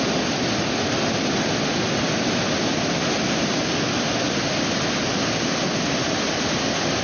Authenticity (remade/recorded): recorded